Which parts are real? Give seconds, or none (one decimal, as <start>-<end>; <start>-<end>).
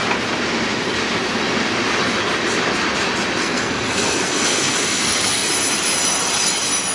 0.0-3.4; 5.5-6.9